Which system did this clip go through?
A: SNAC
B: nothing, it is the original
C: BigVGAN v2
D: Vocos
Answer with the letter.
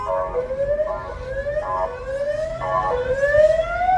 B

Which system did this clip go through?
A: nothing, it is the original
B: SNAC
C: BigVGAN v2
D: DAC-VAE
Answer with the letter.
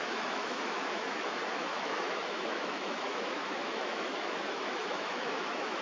D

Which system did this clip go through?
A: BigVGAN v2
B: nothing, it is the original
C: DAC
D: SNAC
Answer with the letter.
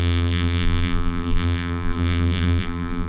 A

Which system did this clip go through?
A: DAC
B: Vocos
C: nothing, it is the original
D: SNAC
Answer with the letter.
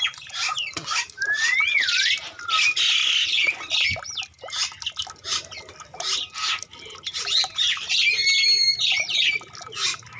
C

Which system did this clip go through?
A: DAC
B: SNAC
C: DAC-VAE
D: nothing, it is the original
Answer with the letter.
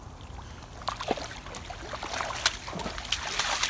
D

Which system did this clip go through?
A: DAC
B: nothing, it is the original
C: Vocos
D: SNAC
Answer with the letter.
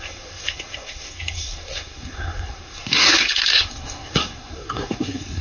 D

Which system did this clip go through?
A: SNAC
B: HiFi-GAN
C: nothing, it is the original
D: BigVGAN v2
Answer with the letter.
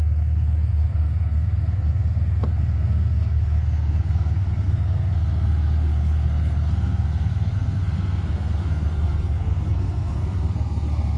A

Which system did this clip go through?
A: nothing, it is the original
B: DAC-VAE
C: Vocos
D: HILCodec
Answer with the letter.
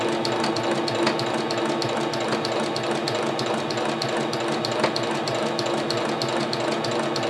A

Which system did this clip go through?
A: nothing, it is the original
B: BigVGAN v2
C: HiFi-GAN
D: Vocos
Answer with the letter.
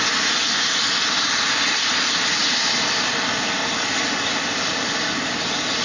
A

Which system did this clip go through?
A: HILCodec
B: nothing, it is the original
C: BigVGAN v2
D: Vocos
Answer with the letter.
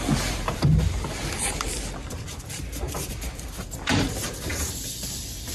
C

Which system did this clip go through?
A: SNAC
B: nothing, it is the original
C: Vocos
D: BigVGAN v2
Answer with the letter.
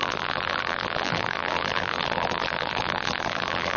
D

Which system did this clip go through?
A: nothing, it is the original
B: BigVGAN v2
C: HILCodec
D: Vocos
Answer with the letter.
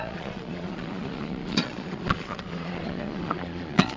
D